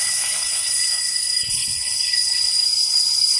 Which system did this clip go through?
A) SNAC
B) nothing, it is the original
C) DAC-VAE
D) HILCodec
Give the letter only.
D